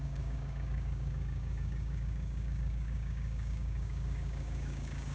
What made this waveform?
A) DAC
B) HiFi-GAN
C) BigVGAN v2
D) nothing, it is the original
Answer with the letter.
A